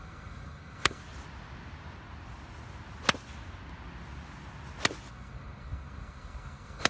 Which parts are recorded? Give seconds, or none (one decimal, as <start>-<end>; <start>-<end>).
1.0-5.1